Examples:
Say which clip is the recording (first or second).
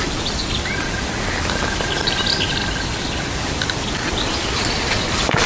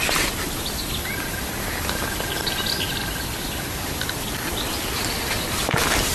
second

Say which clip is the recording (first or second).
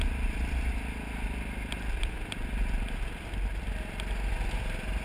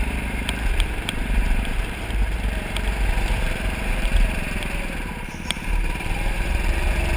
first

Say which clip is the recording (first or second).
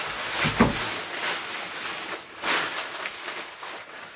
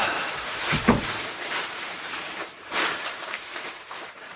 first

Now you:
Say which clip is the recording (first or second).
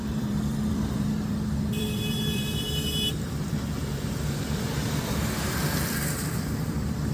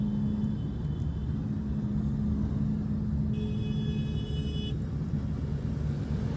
second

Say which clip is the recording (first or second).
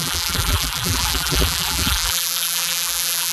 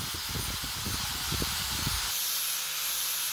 second